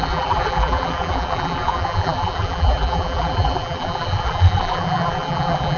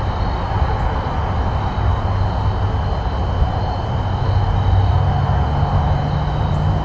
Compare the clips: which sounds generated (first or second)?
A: first